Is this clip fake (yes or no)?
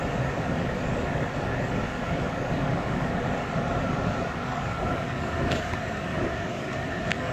yes